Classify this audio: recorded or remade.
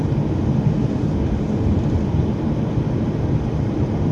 remade